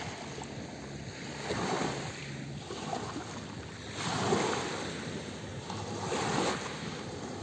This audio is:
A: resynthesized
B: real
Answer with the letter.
B